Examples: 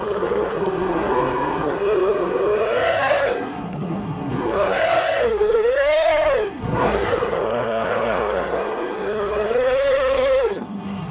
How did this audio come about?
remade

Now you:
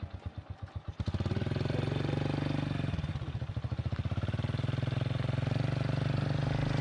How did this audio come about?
recorded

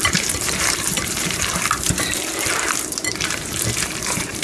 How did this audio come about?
remade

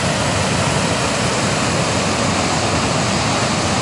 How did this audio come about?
recorded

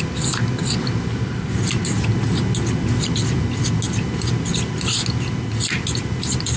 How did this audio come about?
recorded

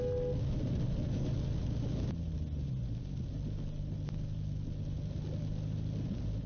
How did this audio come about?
recorded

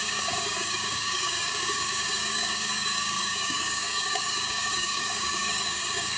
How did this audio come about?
remade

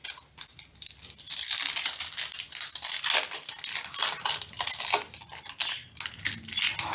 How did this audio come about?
recorded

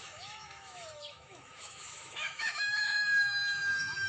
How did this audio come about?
remade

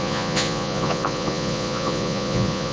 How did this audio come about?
remade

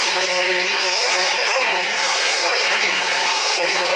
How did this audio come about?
remade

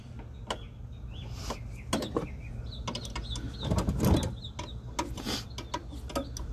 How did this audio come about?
recorded